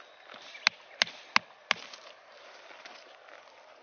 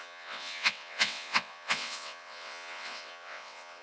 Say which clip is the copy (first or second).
second